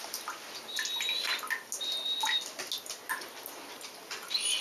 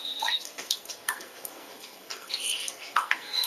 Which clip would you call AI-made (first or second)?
second